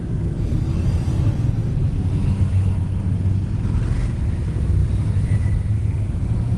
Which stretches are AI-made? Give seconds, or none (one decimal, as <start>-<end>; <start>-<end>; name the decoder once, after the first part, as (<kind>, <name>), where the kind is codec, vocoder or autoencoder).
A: 0.0-0.6 (codec, SNAC)

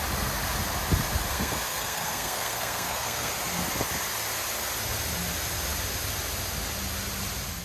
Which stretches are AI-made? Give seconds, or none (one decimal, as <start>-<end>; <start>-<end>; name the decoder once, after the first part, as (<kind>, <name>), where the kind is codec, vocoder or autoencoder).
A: 1.3-3.3 (codec, SNAC)

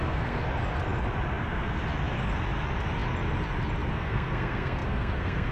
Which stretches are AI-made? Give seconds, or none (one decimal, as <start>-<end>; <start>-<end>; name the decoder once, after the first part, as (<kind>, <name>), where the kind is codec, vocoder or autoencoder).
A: 0.0-0.4 (codec, SNAC); 1.4-1.8; 3.9-5.5